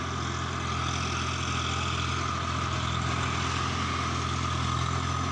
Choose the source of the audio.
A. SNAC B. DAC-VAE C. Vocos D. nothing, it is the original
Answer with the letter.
D